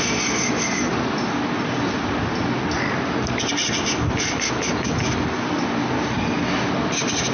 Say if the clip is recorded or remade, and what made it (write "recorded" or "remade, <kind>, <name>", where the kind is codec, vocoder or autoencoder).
recorded